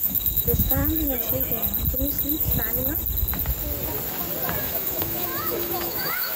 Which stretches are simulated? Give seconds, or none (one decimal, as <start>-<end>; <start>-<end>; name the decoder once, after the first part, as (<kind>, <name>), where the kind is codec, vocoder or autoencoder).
0.0-0.8 (autoencoder, DAC-VAE); 4.6-6.4